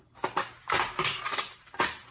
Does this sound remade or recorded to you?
recorded